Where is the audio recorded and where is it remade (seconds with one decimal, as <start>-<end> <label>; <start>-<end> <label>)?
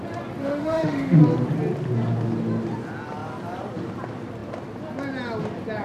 0.0-0.4 recorded; 0.4-1.2 remade; 1.2-5.8 recorded